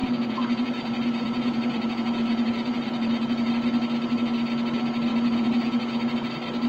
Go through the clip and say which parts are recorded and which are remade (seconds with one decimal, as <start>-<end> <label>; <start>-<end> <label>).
0.0-3.5 remade; 3.5-5.1 recorded; 5.1-6.3 remade; 6.3-6.7 recorded